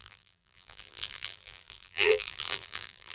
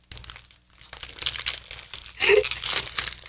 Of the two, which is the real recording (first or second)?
second